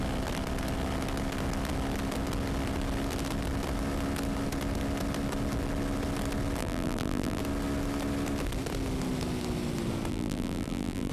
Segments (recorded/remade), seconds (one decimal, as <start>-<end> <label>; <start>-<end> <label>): 0.0-6.6 recorded; 6.6-7.4 remade; 7.4-10.1 recorded; 10.1-11.1 remade